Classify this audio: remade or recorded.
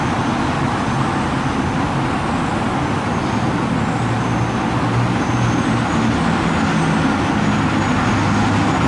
recorded